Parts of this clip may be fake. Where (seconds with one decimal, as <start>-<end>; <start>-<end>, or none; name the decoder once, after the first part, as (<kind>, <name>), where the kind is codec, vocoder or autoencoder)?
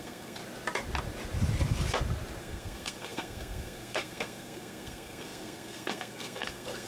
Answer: 0.0-0.4 (codec, SNAC); 2.4-6.9